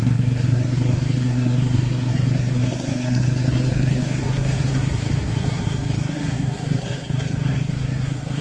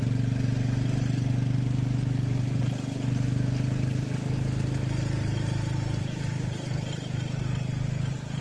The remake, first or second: first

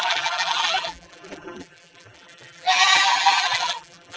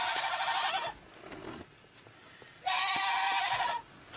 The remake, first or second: first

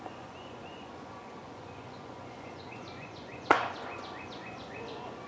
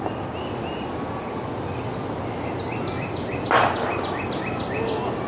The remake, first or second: first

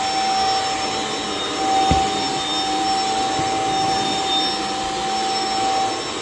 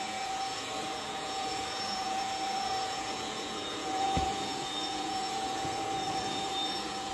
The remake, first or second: second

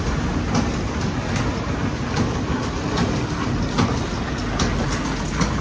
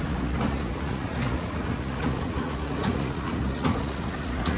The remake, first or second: second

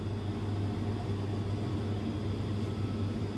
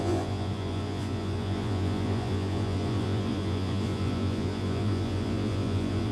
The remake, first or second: second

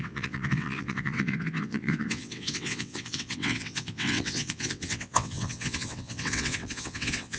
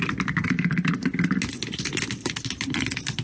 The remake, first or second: first